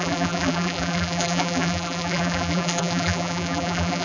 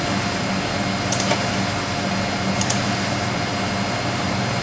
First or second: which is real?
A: second